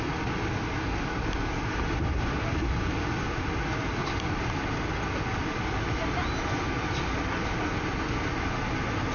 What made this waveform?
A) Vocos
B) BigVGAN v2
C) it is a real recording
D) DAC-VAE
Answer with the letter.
C